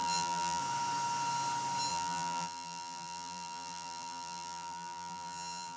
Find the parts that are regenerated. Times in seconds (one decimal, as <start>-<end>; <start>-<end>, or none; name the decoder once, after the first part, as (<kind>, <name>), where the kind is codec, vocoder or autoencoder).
0.0-0.6 (vocoder, BigVGAN v2); 1.9-5.8